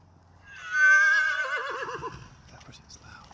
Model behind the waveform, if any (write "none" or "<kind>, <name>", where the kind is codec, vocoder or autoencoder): none